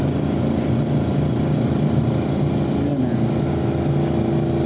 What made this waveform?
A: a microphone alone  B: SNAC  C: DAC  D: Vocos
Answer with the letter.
A